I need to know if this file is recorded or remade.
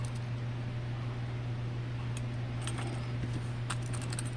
recorded